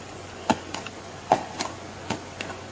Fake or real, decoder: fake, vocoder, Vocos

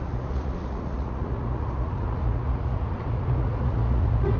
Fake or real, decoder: fake, vocoder, Vocos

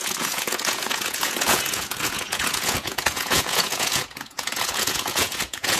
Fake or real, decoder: fake, vocoder, Vocos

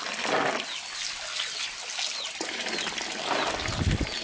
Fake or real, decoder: real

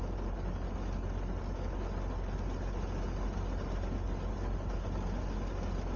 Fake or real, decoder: real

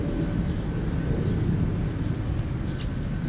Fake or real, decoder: real